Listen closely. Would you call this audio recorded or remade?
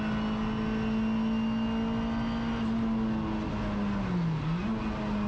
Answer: recorded